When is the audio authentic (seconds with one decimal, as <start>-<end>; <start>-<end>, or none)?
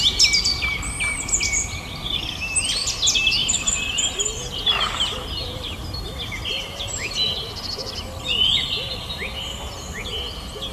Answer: 0.0-3.4; 4.4-10.7